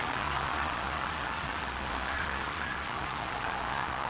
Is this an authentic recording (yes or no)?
no